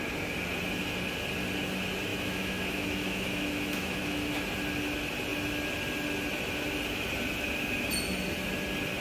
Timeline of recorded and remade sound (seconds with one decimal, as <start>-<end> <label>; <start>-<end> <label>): 0.0-2.1 recorded; 2.1-4.4 remade; 4.4-9.0 recorded